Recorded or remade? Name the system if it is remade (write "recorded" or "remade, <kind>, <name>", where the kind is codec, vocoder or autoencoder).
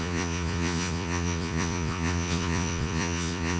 remade, vocoder, Vocos